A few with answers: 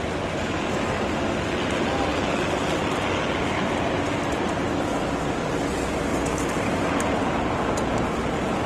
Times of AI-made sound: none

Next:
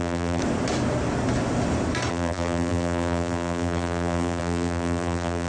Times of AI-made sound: 0.0-0.4 (vocoder, BigVGAN v2); 2.1-5.5

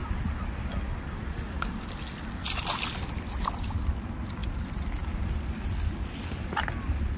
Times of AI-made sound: none

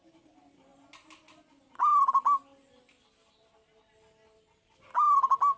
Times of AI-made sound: none

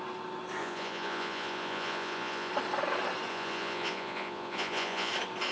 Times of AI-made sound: 0.6-2.5 (vocoder, Vocos); 3.3-5.1

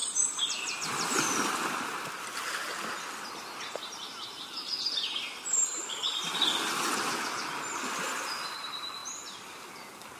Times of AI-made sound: none

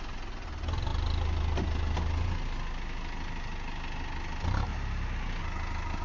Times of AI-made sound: none